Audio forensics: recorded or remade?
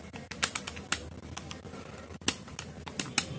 recorded